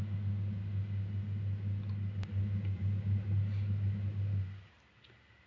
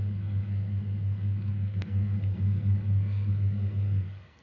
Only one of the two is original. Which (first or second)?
first